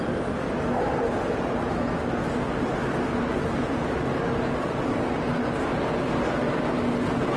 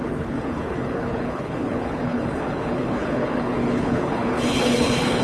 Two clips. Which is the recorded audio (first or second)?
first